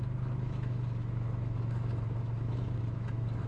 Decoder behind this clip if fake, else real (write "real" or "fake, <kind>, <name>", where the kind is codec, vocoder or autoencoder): fake, autoencoder, DAC-VAE